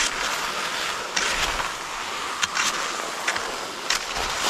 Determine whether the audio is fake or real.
real